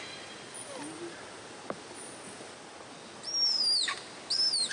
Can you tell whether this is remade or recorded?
recorded